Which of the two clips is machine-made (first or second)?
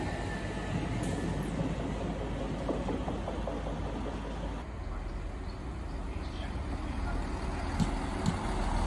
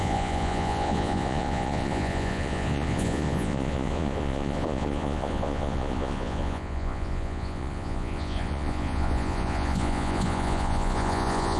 second